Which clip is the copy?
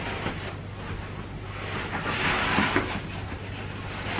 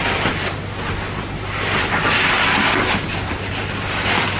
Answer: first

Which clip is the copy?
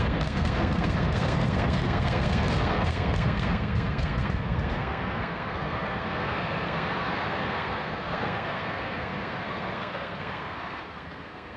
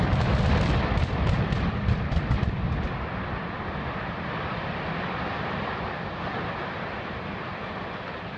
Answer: first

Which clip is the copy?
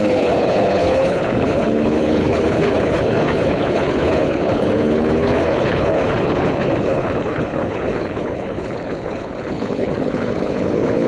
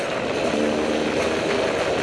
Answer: first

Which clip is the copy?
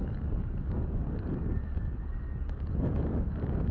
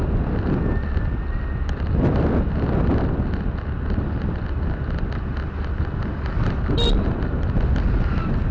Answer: first